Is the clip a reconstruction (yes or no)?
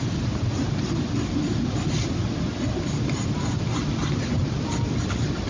no